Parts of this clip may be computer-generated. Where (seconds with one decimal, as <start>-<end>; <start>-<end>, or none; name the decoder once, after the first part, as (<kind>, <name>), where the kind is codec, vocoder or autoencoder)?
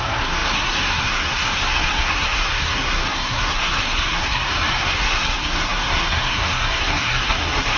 0.0-7.8 (codec, SNAC)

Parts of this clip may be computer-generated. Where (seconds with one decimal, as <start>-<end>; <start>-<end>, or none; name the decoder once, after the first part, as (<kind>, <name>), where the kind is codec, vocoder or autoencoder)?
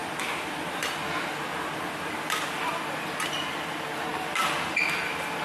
none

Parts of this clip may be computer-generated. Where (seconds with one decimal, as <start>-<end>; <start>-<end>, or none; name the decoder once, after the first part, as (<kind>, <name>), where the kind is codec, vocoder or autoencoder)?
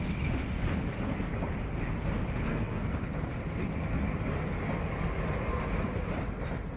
2.5-3.0 (codec, SNAC)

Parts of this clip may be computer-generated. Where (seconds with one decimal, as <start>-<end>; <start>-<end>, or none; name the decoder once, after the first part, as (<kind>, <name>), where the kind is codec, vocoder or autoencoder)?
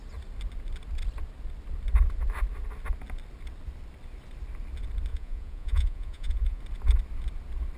5.1-6.6 (vocoder, Vocos)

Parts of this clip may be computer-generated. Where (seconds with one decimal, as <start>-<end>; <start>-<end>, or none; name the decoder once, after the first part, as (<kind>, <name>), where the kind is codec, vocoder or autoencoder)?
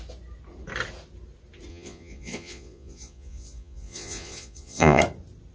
1.7-5.0 (vocoder, Vocos)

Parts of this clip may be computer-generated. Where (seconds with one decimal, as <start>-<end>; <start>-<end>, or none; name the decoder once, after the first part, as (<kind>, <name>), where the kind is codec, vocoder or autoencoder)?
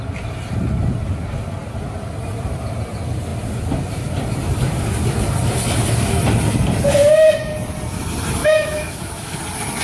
8.4-9.4 (autoencoder, DAC-VAE)